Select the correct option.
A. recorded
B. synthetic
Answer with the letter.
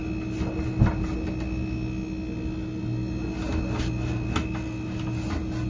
A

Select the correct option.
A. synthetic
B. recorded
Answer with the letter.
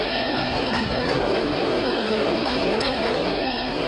A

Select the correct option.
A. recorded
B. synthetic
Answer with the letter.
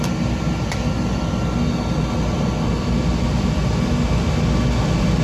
A